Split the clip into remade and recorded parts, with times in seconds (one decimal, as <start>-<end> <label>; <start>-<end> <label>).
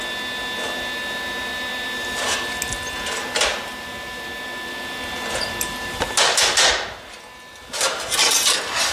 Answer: 0.0-8.9 recorded